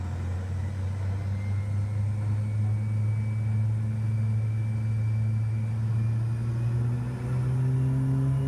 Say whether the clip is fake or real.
real